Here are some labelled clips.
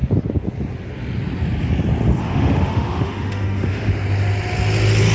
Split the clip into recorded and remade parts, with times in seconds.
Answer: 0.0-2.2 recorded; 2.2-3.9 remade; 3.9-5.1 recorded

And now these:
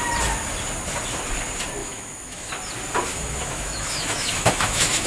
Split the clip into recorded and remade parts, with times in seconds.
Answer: 0.0-1.8 recorded; 1.8-2.5 remade; 2.5-3.1 recorded; 3.1-5.1 remade

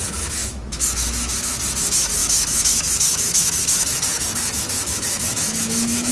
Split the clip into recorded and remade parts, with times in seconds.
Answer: 0.0-6.1 remade

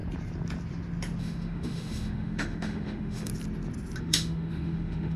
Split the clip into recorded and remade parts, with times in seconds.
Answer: 0.0-1.2 recorded; 1.2-3.3 remade; 3.3-4.0 recorded; 4.0-5.2 remade

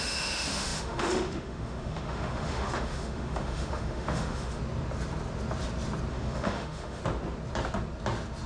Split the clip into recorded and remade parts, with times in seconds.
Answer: 0.0-4.6 remade; 4.6-6.1 recorded; 6.1-7.0 remade; 7.0-8.5 recorded

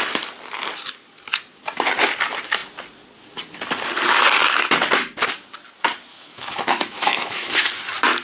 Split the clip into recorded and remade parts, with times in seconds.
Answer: 0.0-6.1 recorded; 6.1-7.7 remade; 7.7-8.2 recorded

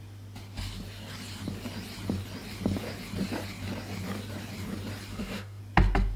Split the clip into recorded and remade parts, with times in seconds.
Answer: 0.0-5.1 recorded; 5.1-5.6 remade; 5.6-6.2 recorded

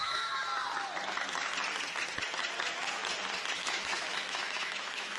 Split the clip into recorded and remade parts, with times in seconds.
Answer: 0.0-0.5 remade; 0.5-3.6 recorded; 3.6-5.2 remade